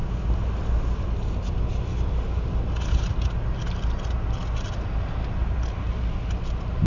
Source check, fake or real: real